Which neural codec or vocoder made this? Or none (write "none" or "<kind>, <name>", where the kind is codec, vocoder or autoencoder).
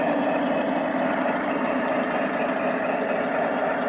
none